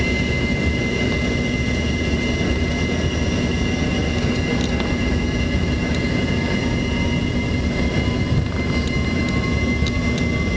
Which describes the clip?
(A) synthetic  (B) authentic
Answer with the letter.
B